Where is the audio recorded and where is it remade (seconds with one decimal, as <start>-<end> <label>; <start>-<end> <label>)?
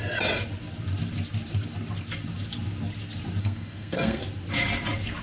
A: 0.0-3.4 recorded; 3.4-4.2 remade; 4.2-5.2 recorded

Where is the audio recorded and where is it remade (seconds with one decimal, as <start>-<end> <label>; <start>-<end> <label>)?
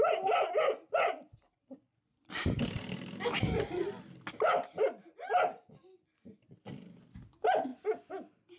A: 0.0-8.6 recorded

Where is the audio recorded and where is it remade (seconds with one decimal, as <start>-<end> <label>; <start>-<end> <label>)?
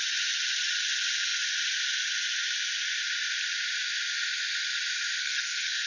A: 0.0-5.2 recorded; 5.2-5.9 remade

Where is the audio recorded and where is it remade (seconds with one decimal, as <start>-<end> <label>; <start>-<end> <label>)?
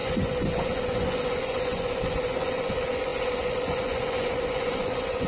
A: 0.0-5.3 remade